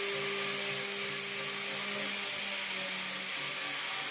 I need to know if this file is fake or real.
real